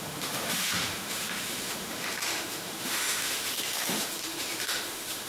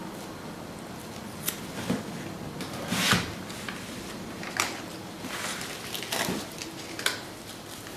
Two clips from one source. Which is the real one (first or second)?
second